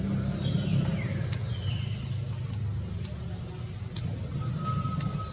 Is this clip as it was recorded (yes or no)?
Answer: yes